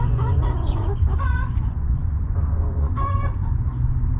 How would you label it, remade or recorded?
remade